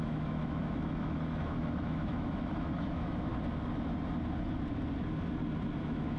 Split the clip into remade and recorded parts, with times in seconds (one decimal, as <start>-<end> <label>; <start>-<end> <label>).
0.0-3.3 remade; 3.3-5.8 recorded; 5.8-6.2 remade